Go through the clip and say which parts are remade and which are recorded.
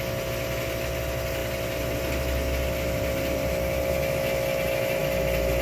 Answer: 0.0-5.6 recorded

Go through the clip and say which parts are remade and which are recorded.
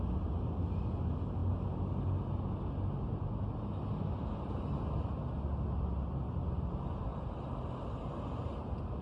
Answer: 0.0-9.0 recorded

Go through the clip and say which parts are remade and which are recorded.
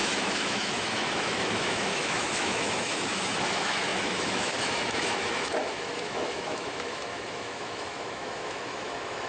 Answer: 0.0-9.3 remade